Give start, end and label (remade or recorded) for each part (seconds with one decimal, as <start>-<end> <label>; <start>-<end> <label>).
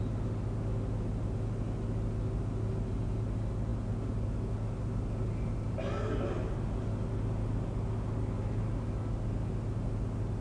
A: 0.0-10.4 recorded